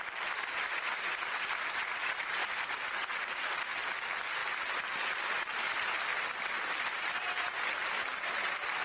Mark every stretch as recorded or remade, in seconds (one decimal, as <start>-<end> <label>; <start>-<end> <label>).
0.0-8.8 recorded